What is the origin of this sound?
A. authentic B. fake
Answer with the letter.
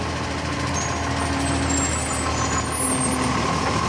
A